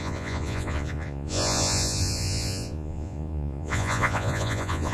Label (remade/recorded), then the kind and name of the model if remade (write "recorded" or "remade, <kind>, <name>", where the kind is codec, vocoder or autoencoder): remade, vocoder, Vocos